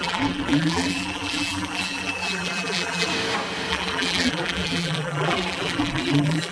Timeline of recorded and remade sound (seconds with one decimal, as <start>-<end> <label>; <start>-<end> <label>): 0.0-3.1 remade; 3.1-3.7 recorded; 3.7-6.5 remade